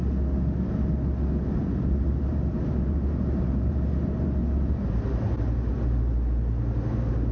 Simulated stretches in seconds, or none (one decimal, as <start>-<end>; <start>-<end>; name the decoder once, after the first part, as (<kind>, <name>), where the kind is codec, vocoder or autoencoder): 1.6-5.3 (vocoder, BigVGAN v2)